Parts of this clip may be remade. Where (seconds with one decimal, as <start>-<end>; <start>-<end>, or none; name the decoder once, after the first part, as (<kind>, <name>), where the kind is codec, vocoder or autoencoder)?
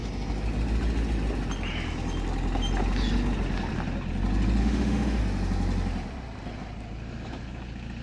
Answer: 4.6-5.2 (autoencoder, DAC-VAE)